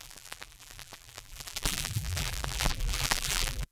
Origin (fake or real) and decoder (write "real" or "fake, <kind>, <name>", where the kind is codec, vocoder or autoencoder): fake, vocoder, BigVGAN v2